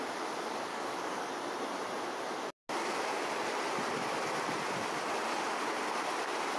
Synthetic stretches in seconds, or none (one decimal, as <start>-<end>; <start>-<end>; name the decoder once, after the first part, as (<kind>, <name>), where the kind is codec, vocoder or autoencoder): 0.7-1.3 (codec, DAC)

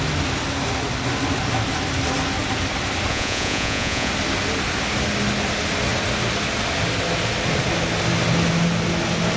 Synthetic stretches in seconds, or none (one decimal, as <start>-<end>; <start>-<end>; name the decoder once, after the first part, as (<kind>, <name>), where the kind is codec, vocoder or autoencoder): 3.1-4.1 (vocoder, Vocos)